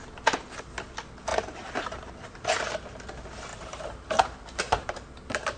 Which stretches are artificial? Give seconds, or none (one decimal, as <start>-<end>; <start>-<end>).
1.3-2.1; 3.5-5.6